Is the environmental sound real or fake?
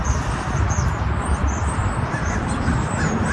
real